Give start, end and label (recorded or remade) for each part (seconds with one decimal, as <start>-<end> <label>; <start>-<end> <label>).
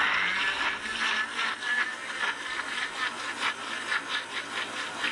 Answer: 0.0-5.1 recorded